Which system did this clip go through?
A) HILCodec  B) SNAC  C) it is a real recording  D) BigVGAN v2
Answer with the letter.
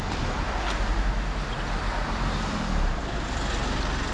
C